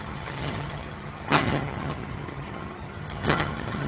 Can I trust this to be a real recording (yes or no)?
no